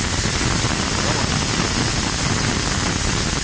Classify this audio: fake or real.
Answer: real